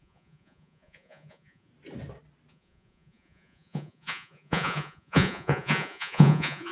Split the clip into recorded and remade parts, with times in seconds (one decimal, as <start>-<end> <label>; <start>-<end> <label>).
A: 0.0-1.7 remade; 1.7-2.5 recorded; 2.5-6.7 remade